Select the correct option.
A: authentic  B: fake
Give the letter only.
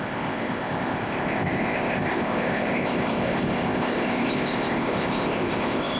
B